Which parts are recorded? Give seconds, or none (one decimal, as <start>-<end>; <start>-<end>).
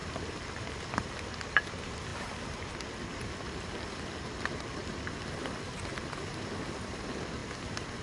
0.0-8.0